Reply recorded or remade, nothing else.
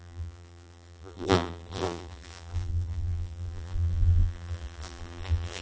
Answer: remade